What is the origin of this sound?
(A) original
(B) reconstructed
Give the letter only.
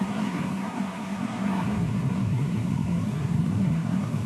B